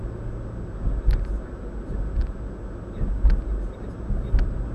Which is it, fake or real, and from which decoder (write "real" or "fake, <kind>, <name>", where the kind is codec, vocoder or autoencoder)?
real